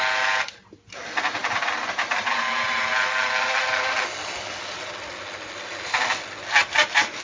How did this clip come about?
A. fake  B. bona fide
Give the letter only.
B